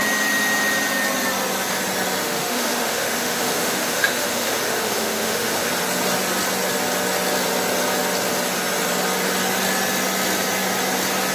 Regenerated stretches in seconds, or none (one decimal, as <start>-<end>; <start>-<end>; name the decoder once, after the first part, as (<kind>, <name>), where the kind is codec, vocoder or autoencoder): 2.2-5.7 (autoencoder, DAC-VAE)